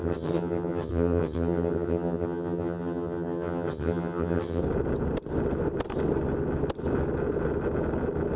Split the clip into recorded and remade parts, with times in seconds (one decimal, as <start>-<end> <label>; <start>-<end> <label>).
0.0-4.6 remade; 4.6-8.4 recorded